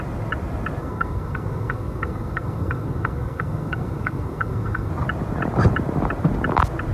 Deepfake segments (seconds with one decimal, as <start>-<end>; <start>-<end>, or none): 0.8-4.9